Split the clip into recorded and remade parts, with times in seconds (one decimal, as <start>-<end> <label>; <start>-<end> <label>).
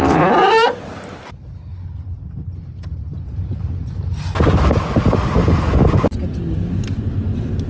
0.0-7.7 recorded